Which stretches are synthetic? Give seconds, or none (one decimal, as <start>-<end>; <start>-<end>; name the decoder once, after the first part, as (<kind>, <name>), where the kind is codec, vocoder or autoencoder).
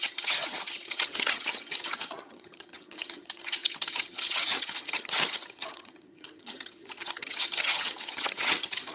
0.0-8.9 (vocoder, HiFi-GAN)